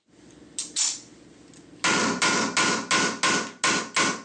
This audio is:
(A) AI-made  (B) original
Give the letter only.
B